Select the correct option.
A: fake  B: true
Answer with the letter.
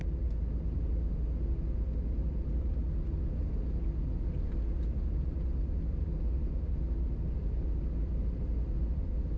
B